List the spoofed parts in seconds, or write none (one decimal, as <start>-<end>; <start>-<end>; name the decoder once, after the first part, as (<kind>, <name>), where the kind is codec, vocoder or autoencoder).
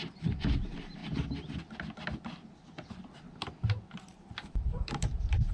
0.0-1.0 (vocoder, BigVGAN v2); 4.0-5.5